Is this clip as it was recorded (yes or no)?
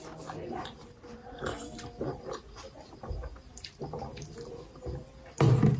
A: yes